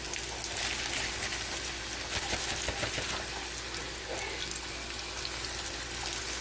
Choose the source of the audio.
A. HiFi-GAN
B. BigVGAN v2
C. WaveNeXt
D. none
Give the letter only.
D